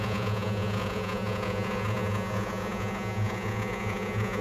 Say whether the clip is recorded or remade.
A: remade